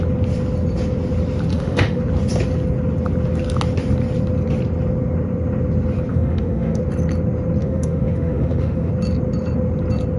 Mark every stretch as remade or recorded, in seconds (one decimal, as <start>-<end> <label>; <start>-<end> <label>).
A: 0.0-1.5 recorded; 1.5-2.0 remade; 2.0-6.1 recorded; 6.1-6.8 remade; 6.8-7.6 recorded; 7.6-8.9 remade; 8.9-10.2 recorded